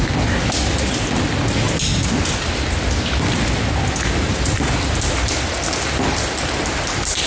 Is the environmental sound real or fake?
real